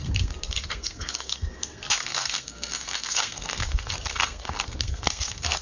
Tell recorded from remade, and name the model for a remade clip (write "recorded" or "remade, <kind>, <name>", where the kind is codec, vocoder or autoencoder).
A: remade, codec, SNAC